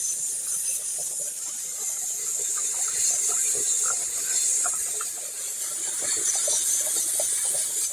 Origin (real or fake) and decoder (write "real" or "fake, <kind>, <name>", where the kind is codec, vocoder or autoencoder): fake, vocoder, BigVGAN v2